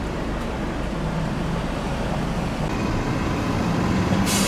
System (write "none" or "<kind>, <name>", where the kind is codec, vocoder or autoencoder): vocoder, BigVGAN v2